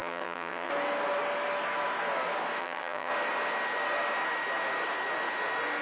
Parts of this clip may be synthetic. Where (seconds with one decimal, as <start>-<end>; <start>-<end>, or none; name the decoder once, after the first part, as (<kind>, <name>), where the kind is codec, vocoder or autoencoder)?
0.0-0.7 (vocoder, HiFi-GAN); 2.6-3.1